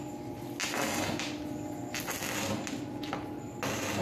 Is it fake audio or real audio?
real